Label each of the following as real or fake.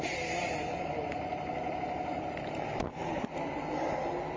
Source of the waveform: real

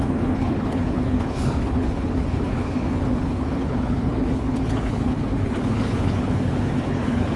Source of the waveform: fake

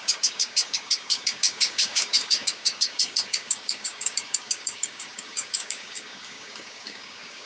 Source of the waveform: fake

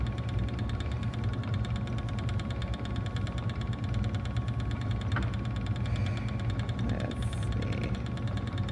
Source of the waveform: real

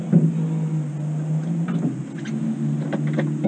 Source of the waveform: real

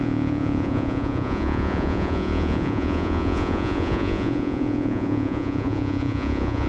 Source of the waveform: fake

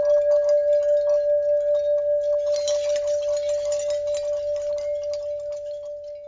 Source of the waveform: real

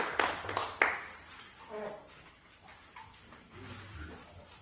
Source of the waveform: real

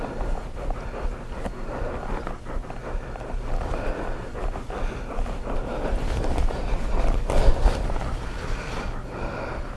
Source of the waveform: real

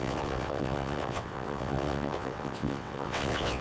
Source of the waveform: fake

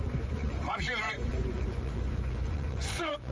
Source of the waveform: fake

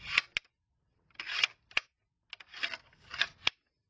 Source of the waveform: real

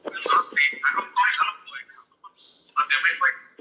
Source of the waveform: real